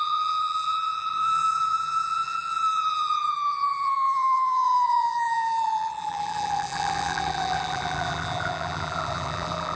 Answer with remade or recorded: remade